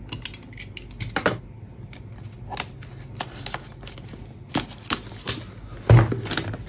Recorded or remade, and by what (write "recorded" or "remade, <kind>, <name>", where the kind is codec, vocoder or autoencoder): recorded